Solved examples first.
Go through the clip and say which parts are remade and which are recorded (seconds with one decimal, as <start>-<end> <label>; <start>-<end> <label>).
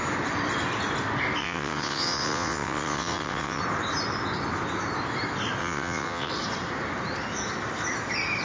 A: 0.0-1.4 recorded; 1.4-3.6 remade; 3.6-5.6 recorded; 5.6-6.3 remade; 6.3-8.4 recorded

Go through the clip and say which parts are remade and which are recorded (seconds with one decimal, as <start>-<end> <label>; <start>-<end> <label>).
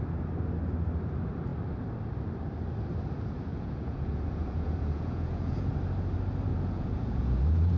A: 0.0-3.5 recorded; 3.5-5.7 remade; 5.7-6.5 recorded; 6.5-7.8 remade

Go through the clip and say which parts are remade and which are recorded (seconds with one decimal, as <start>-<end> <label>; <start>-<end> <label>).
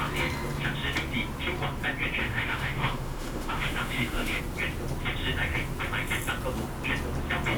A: 0.0-2.2 recorded; 2.2-4.4 remade; 4.4-7.6 recorded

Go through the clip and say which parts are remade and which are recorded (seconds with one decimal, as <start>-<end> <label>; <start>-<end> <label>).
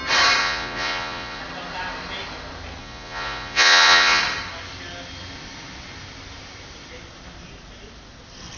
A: 0.0-0.4 recorded; 0.4-1.4 remade; 1.4-2.8 recorded; 2.8-4.2 remade; 4.2-8.6 recorded